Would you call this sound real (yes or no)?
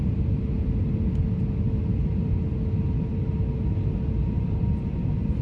yes